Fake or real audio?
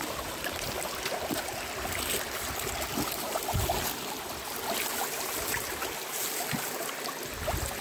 real